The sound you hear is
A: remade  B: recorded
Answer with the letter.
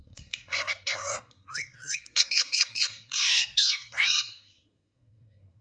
A